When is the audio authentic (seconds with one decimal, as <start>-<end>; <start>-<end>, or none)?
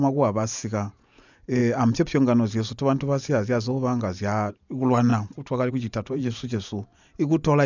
1.6-4.5; 5.1-5.7; 6.9-7.7